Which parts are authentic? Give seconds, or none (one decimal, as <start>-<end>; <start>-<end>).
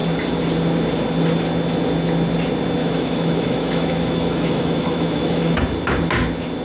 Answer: 0.0-2.8; 5.6-6.6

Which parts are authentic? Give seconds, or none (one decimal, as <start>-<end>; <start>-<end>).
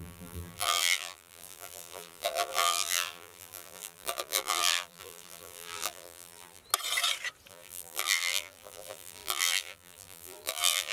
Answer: 6.6-7.5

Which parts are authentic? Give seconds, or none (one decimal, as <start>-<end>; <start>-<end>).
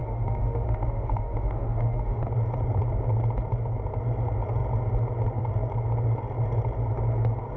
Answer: 2.2-7.6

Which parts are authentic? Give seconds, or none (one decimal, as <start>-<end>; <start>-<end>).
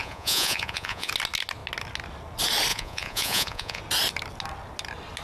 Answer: 1.1-2.7; 3.8-5.2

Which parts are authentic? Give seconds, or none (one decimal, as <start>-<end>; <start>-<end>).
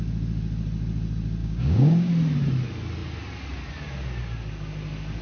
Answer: 0.0-1.4; 2.1-5.2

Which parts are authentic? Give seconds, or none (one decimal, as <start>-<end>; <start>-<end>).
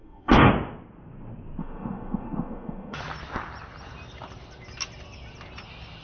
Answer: 0.5-1.6; 3.0-6.0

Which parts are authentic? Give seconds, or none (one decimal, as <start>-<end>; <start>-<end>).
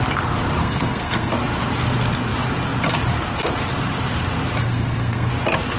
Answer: 0.0-0.6; 1.3-4.6; 5.3-5.8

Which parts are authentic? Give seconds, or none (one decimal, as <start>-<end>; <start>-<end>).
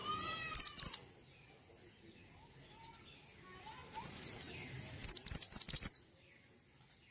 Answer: 0.0-3.8; 5.6-7.1